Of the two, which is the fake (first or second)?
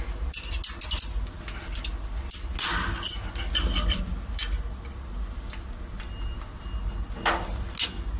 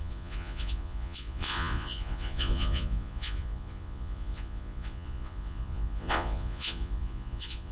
second